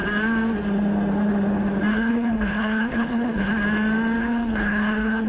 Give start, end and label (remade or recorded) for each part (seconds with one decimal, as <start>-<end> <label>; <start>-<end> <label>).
0.0-1.9 recorded; 1.9-3.5 remade; 3.5-4.2 recorded; 4.2-5.3 remade